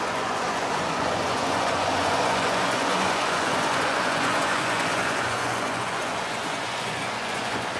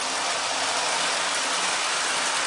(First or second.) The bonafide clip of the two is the second